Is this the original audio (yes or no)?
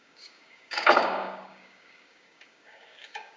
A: no